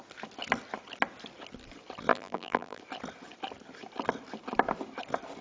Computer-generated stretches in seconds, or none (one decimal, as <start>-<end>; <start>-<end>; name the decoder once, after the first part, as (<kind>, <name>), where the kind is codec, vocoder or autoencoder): 2.1-2.8 (vocoder, BigVGAN v2)